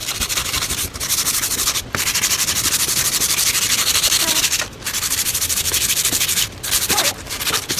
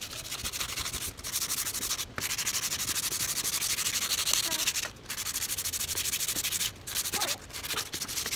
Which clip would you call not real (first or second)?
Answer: first